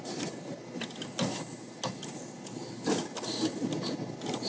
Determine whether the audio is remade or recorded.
recorded